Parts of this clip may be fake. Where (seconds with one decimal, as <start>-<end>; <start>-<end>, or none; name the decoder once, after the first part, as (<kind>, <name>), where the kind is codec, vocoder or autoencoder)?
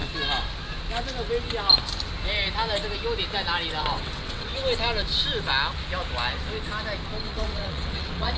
3.8-4.5 (vocoder, WaveNeXt); 7.2-8.4